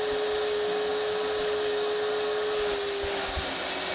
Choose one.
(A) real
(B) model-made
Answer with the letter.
A